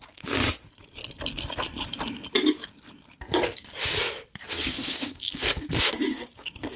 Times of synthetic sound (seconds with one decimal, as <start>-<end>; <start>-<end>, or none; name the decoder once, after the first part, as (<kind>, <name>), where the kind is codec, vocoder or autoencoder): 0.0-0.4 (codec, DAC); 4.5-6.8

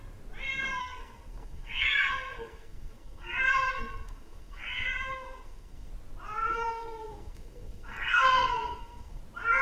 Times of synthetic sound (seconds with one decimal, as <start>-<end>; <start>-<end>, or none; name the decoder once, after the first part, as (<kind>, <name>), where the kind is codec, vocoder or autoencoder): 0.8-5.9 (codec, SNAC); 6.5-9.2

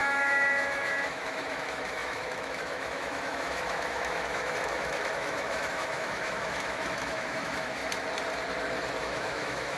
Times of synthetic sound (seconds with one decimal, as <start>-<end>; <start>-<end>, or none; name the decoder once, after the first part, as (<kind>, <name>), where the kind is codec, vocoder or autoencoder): 0.0-7.8 (autoencoder, DAC-VAE); 9.0-9.8

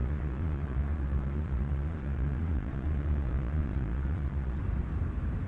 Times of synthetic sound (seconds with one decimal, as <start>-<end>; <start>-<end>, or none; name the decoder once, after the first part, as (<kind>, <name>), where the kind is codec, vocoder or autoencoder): 0.0-4.6 (vocoder, Vocos)

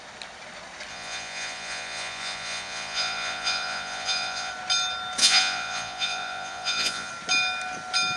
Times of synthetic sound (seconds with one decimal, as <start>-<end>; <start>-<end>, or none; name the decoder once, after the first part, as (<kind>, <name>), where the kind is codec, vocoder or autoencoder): 0.9-4.5 (vocoder, Vocos); 5.2-7.1